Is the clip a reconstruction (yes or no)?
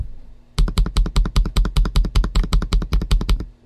no